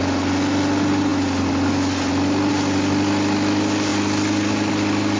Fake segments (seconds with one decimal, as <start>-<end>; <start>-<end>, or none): none